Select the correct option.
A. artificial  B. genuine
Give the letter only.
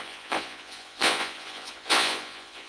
A